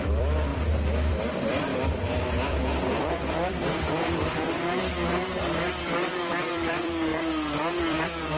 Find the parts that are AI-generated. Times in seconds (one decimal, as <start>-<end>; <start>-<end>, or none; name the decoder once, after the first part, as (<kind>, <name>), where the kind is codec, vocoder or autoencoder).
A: 0.0-0.5 (vocoder, BigVGAN v2); 1.1-4.9; 5.8-7.1; 7.8-8.4